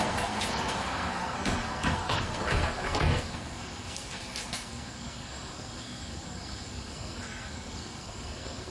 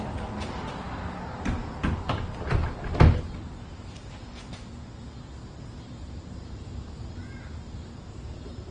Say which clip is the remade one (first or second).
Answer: first